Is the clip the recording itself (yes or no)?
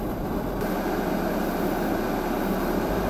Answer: yes